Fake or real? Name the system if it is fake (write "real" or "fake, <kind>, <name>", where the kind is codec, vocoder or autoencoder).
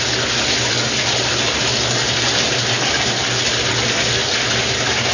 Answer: real